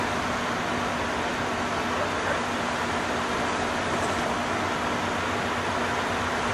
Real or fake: real